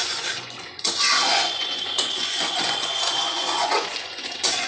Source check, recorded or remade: remade